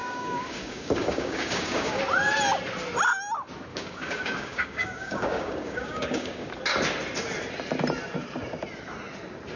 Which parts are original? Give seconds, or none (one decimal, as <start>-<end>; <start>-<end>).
2.0-3.7; 6.5-9.6